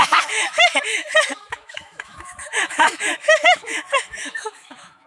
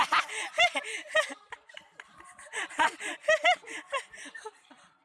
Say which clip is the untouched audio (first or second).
second